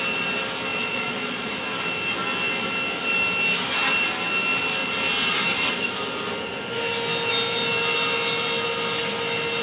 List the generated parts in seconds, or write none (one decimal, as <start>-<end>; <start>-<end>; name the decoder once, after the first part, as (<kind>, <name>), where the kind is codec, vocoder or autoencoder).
0.7-1.5 (vocoder, Vocos)